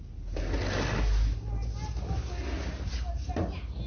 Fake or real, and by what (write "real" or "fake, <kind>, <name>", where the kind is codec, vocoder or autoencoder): real